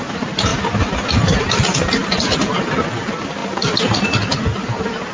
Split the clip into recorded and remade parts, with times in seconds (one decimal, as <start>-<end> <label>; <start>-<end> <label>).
0.0-5.1 recorded